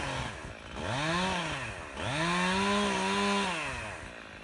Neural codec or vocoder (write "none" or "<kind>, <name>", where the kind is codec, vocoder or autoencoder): none